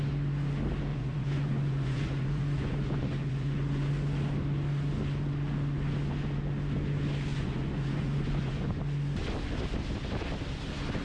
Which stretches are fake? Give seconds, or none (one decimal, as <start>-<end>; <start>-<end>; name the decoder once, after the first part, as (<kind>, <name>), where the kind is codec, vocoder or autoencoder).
0.9-3.9 (vocoder, Vocos); 7.3-8.8